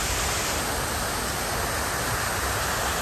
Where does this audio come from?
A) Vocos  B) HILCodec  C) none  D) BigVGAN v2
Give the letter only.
C